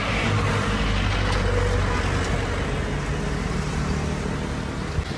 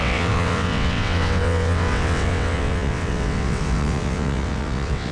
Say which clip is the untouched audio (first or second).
first